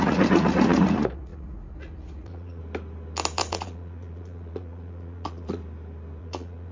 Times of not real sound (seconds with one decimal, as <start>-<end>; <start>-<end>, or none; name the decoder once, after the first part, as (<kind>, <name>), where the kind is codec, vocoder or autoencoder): 0.0-2.6 (vocoder, Vocos); 3.4-5.6; 6.2-6.7